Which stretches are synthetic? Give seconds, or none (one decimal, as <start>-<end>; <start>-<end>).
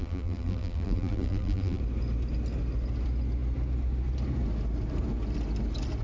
0.0-1.8